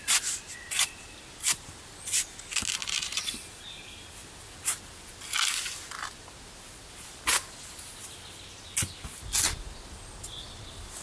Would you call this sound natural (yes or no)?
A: yes